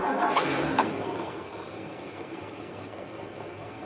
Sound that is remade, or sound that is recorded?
remade